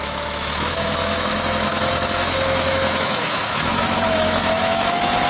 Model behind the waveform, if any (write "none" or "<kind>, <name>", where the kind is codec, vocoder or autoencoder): autoencoder, DAC-VAE